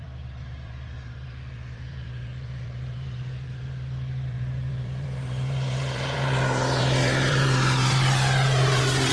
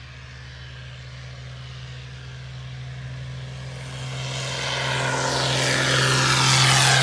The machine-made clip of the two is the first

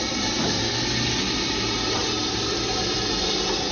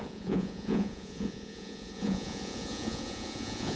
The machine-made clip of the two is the second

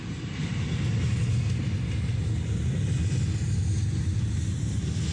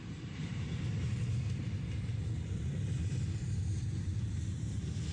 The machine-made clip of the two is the second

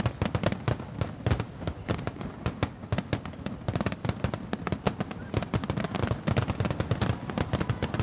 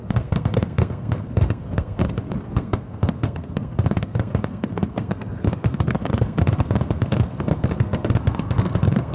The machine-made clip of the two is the second